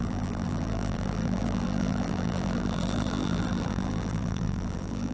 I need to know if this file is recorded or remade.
remade